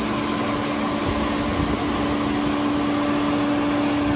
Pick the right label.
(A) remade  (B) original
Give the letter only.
B